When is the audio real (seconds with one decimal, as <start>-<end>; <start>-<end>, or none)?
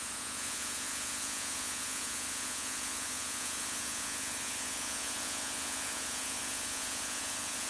none